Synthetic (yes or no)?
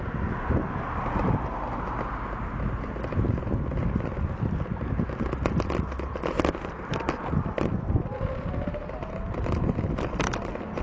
no